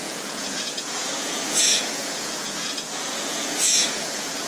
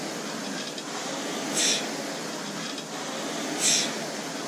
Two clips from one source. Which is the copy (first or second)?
first